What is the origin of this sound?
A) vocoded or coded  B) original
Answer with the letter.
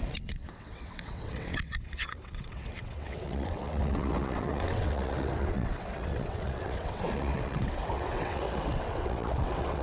A